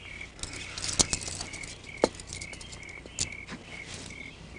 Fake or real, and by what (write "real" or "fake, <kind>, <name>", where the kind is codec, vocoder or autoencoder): real